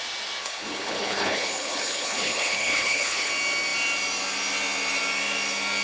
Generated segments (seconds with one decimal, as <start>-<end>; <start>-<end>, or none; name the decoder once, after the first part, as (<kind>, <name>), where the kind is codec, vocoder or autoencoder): 0.4-3.3 (codec, HILCodec)